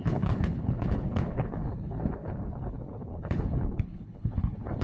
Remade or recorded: remade